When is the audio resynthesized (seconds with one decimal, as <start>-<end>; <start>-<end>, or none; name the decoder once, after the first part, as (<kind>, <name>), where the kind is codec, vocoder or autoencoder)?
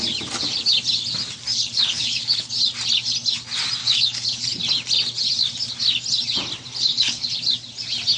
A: 1.5-2.5 (codec, HILCodec); 3.8-4.6; 6.7-7.3